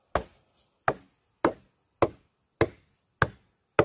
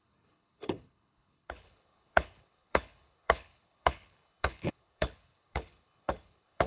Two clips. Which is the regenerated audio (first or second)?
second